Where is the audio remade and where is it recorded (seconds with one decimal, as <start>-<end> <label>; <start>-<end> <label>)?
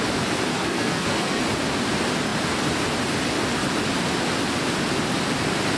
0.0-0.5 recorded; 0.5-1.4 remade; 1.4-5.8 recorded